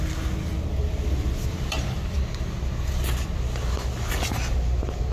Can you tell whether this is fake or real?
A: real